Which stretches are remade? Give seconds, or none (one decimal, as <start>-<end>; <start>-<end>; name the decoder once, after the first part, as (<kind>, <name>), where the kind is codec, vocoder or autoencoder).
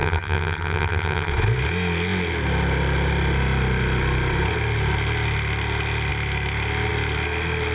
0.0-1.3 (vocoder, HiFi-GAN)